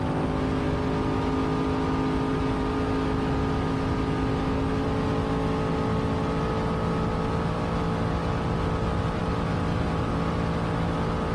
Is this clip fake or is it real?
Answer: real